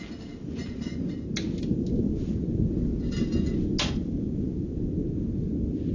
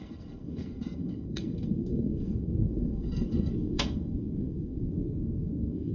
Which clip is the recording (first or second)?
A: first